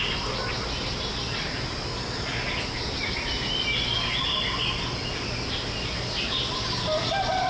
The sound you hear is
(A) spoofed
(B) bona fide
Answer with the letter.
B